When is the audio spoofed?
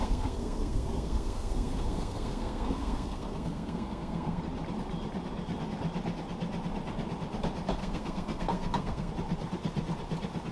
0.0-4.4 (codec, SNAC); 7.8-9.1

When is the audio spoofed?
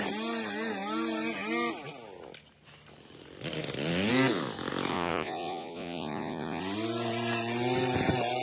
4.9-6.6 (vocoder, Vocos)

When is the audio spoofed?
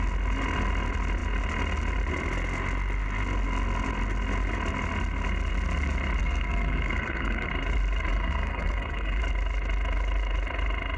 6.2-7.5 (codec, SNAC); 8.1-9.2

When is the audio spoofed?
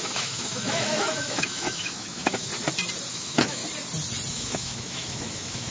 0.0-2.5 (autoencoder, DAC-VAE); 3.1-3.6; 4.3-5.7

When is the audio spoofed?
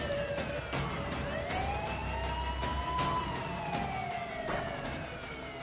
none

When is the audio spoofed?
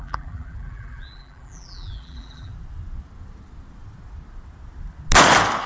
0.0-2.5 (vocoder, BigVGAN v2)